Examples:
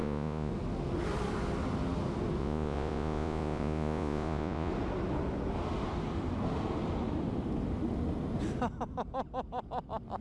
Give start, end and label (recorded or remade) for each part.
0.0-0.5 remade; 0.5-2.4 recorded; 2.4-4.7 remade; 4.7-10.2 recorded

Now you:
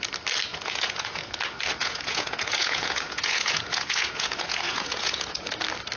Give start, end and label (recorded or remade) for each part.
0.0-0.5 recorded; 0.5-1.4 remade; 1.4-1.8 recorded; 1.8-5.4 remade; 5.4-6.0 recorded

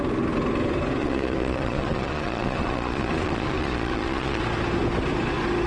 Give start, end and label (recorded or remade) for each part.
0.0-1.0 recorded; 1.0-4.4 remade; 4.4-5.7 recorded

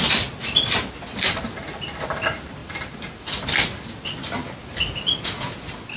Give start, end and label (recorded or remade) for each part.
0.0-6.0 recorded

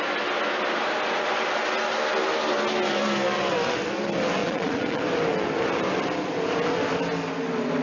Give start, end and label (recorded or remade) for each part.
0.0-4.4 recorded; 4.4-5.0 remade; 5.0-7.8 recorded

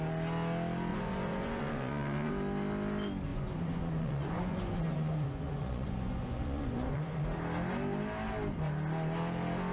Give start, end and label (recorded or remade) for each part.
0.0-0.9 recorded; 0.9-2.3 remade; 2.3-3.3 recorded; 3.3-7.2 remade; 7.2-9.7 recorded